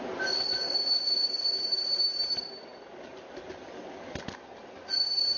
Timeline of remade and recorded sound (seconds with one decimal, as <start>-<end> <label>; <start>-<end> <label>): 0.0-5.4 recorded